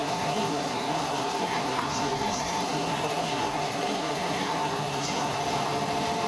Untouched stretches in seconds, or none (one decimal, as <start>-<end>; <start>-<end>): 5.4-6.3